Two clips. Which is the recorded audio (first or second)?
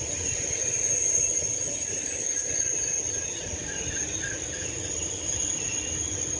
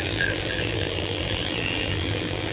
first